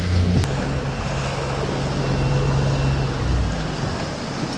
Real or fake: real